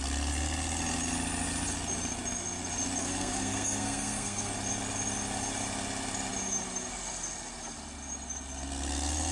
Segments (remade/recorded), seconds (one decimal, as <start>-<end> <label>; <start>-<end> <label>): 0.0-3.0 recorded; 3.0-4.5 remade; 4.5-9.3 recorded